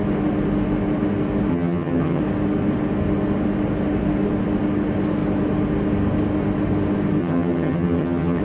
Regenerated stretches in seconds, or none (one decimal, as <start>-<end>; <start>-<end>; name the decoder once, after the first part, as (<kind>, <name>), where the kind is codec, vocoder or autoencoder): 1.5-2.2 (vocoder, HiFi-GAN); 7.2-8.4